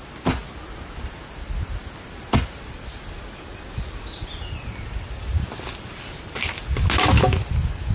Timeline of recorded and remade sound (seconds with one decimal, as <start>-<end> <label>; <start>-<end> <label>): 0.0-7.9 recorded